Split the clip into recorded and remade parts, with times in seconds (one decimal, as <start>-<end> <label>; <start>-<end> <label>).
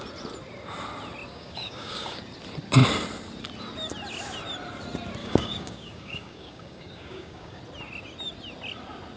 0.0-1.3 recorded; 1.3-2.2 remade; 2.2-5.2 recorded; 5.2-7.6 remade; 7.6-9.2 recorded